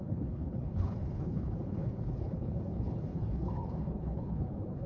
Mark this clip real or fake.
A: fake